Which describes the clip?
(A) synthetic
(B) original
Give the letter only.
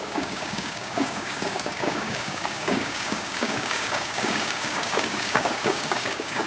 A